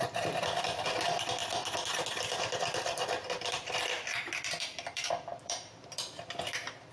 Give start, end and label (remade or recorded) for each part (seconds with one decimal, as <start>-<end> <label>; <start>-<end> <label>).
0.0-1.4 remade; 1.4-2.3 recorded; 2.3-6.9 remade